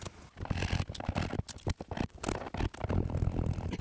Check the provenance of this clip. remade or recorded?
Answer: recorded